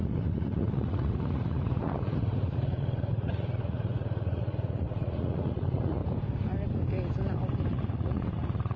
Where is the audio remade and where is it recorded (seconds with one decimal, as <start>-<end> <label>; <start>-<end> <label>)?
0.0-6.0 remade; 6.0-7.7 recorded; 7.7-8.8 remade